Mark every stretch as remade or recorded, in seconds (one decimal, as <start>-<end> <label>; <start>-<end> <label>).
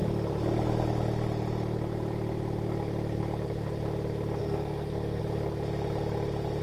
0.0-4.4 recorded; 4.4-5.2 remade; 5.2-6.6 recorded